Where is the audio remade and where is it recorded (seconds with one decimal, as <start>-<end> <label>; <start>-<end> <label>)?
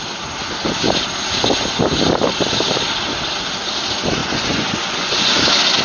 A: 0.0-4.2 recorded; 4.2-5.3 remade; 5.3-5.8 recorded